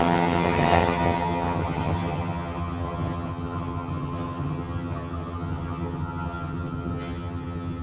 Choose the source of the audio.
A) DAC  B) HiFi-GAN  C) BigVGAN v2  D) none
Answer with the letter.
B